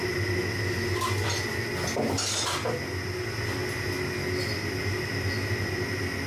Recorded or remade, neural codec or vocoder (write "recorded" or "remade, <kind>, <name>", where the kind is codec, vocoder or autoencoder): recorded